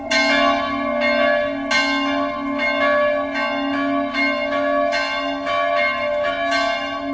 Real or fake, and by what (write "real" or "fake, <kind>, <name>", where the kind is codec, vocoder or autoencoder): real